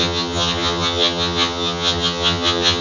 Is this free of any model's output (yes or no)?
no